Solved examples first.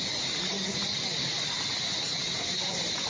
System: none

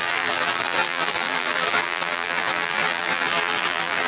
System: vocoder, BigVGAN v2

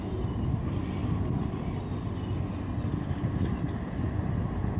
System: none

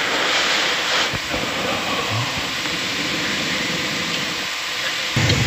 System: vocoder, BigVGAN v2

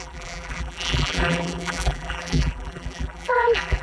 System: vocoder, BigVGAN v2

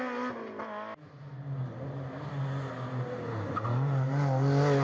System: none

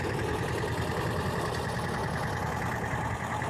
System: none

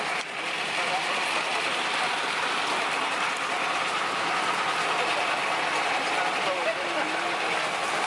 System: vocoder, BigVGAN v2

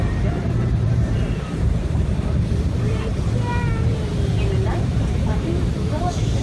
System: vocoder, BigVGAN v2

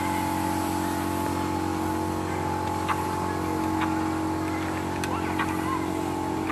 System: none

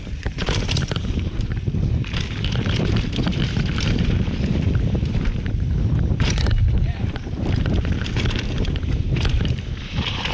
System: vocoder, BigVGAN v2